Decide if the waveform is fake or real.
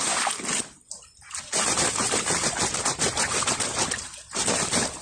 real